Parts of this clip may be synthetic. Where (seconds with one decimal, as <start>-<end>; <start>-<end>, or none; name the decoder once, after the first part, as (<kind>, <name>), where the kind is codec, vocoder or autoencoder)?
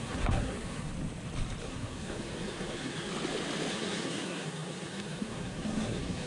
0.0-0.9 (codec, SNAC); 1.6-3.1; 3.7-6.3